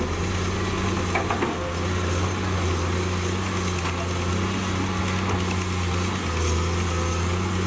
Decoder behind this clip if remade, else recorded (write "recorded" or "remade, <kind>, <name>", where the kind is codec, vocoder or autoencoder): recorded